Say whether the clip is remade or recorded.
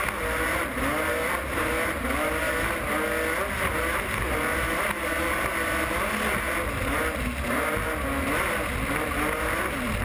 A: recorded